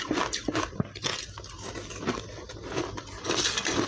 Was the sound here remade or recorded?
recorded